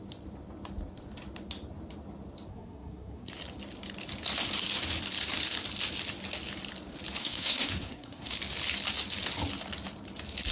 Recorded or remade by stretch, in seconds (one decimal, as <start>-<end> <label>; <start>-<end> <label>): 0.0-2.5 recorded; 2.5-3.3 remade; 3.3-7.2 recorded; 7.2-8.3 remade; 8.3-10.5 recorded